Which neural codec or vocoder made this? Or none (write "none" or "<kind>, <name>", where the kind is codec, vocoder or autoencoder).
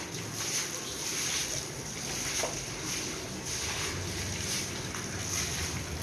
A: none